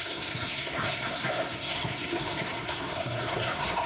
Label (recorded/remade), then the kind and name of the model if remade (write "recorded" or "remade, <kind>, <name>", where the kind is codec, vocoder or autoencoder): remade, codec, SNAC